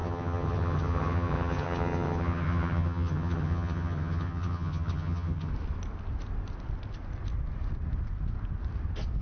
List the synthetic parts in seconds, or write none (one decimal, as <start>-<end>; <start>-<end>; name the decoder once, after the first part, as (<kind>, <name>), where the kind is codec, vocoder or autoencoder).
0.0-5.5 (vocoder, HiFi-GAN)